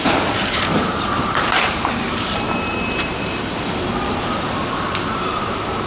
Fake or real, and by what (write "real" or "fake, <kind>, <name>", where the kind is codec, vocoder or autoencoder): fake, vocoder, BigVGAN v2